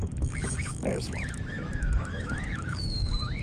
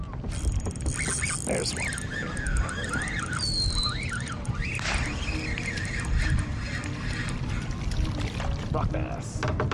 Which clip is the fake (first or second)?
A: first